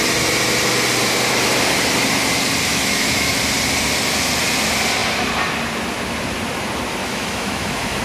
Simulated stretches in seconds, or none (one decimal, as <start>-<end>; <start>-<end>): 2.7-3.4; 7.0-8.0